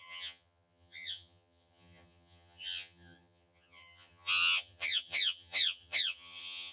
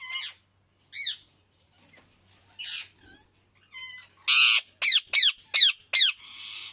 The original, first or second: second